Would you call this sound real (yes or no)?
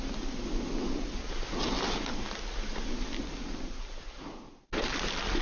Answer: yes